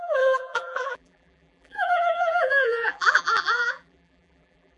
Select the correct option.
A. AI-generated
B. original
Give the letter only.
A